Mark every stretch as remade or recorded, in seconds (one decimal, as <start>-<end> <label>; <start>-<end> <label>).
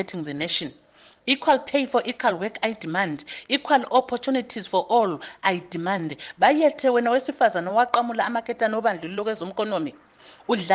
0.0-7.7 remade; 7.7-8.4 recorded; 8.4-10.7 remade